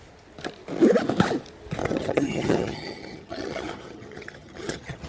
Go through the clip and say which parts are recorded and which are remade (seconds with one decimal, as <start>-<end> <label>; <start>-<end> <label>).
0.0-1.8 recorded; 1.8-5.1 remade